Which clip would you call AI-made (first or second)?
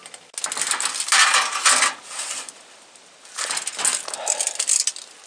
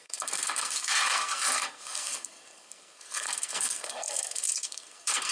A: second